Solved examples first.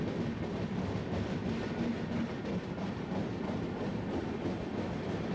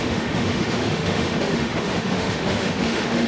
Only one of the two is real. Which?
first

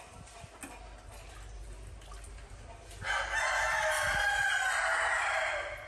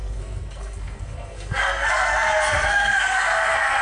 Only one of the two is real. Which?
first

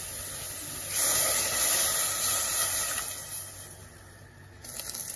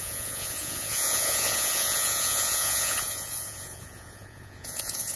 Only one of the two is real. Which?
first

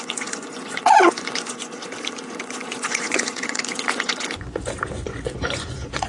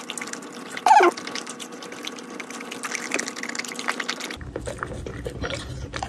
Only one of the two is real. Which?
second